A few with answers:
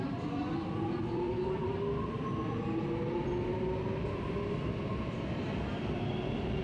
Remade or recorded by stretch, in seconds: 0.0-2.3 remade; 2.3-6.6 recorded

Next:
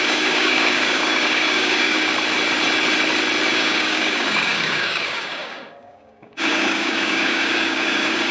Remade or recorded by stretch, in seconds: 0.0-2.1 remade; 2.1-3.5 recorded; 3.5-8.3 remade

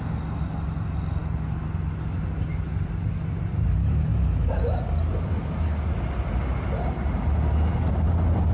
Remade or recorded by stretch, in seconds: 0.0-8.5 recorded

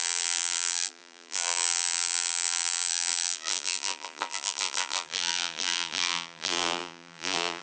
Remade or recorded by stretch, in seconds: 0.0-7.6 remade

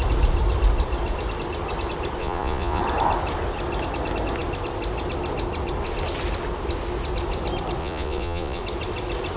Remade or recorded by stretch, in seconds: 0.0-2.2 recorded; 2.2-2.8 remade; 2.8-7.8 recorded; 7.8-8.6 remade; 8.6-9.4 recorded

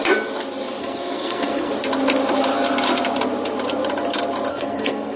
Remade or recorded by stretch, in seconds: 0.0-0.8 recorded; 0.8-1.7 remade; 1.7-4.5 recorded; 4.5-5.2 remade